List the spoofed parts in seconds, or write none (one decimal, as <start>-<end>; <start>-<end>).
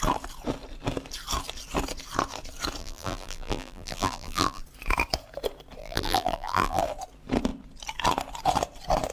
2.8-4.6; 5.8-6.8